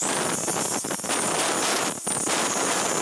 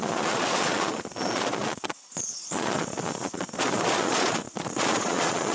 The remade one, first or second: second